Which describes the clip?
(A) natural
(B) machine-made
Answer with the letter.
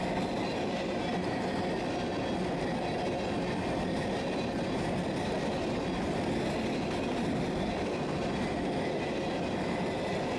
A